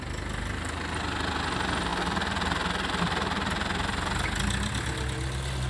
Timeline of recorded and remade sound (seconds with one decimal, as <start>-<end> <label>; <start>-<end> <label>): 0.0-5.7 recorded

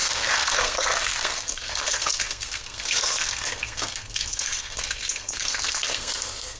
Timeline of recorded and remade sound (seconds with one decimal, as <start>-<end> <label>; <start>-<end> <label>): 0.0-6.6 remade

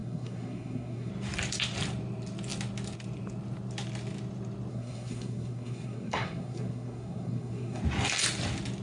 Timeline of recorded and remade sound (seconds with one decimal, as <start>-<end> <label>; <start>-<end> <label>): 0.0-1.1 remade; 1.1-4.7 recorded; 4.7-7.8 remade; 7.8-8.8 recorded

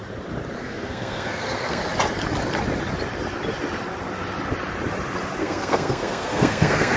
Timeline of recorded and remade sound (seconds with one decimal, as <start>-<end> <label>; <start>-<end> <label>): 0.0-0.6 recorded; 0.6-1.8 remade; 1.8-5.4 recorded; 5.4-7.0 remade

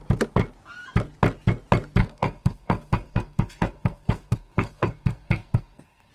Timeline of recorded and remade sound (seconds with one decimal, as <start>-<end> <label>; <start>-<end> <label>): 0.0-2.0 recorded; 2.0-6.1 remade

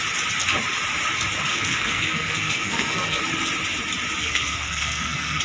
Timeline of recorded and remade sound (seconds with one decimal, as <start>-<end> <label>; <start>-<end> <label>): 0.0-1.5 recorded; 1.5-3.2 remade; 3.2-4.2 recorded; 4.2-5.4 remade